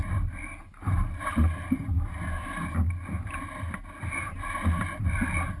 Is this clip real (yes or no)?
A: yes